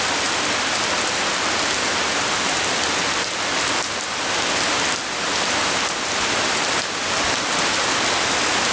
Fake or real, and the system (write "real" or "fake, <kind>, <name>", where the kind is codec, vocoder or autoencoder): real